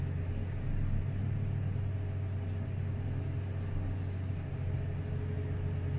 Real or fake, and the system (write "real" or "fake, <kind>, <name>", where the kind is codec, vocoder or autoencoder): real